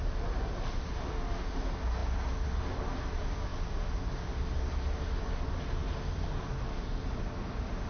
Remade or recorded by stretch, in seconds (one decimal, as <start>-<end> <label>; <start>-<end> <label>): 0.0-7.9 recorded